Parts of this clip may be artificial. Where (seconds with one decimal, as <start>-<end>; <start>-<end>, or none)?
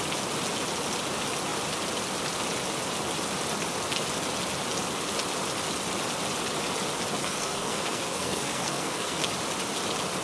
7.2-9.2